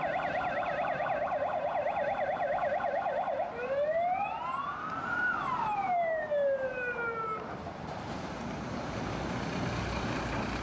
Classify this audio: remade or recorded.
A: remade